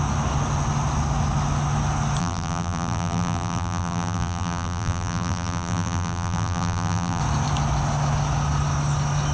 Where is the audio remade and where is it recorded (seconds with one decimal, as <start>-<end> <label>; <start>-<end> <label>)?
0.0-2.2 recorded; 2.2-7.2 remade; 7.2-9.3 recorded